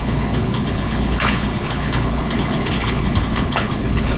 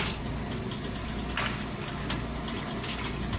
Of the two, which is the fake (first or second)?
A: first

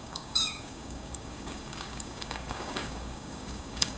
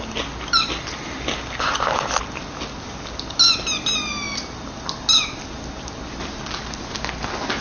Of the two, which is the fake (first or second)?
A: first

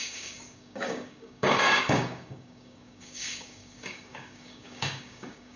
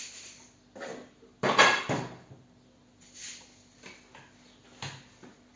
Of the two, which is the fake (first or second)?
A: first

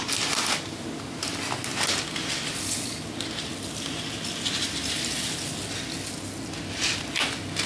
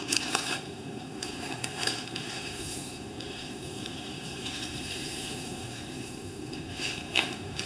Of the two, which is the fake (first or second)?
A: second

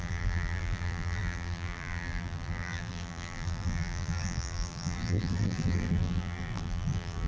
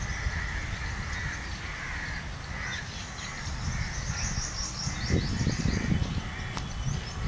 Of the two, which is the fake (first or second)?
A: first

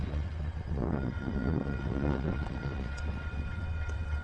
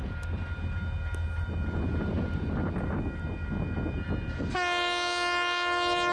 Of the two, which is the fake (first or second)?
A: first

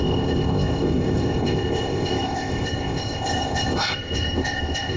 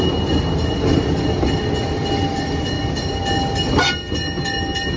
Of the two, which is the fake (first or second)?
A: first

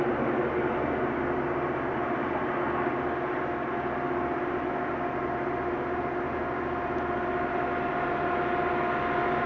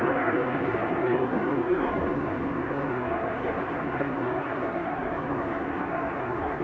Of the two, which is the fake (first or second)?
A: second